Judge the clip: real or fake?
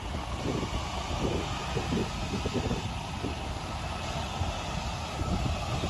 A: real